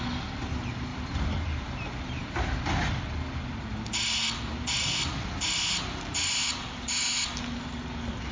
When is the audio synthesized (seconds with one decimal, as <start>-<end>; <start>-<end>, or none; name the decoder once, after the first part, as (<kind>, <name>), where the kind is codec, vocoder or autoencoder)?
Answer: none